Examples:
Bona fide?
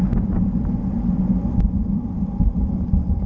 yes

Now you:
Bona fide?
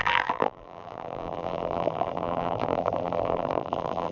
no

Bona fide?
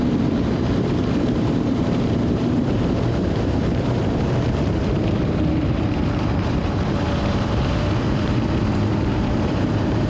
no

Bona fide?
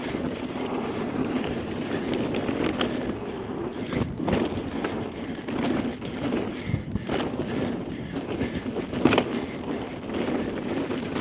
no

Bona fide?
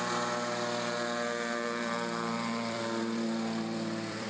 no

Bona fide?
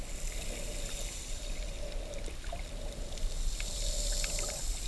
yes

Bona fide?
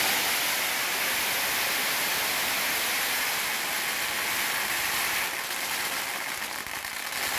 yes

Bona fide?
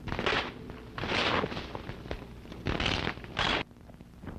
yes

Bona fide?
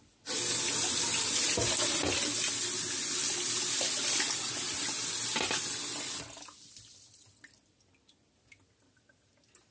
yes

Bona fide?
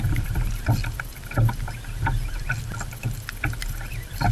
no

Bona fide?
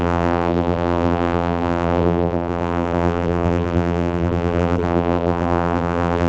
no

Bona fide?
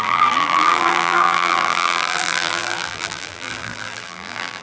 no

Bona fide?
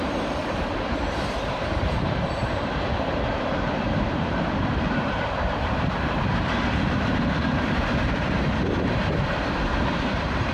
no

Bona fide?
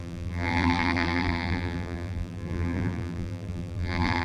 no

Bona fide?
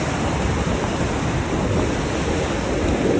yes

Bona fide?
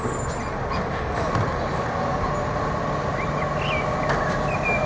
yes